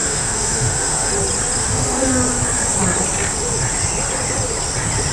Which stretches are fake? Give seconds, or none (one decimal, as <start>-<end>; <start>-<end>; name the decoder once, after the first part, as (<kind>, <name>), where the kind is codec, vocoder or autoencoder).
0.0-1.1 (autoencoder, DAC-VAE); 1.6-2.1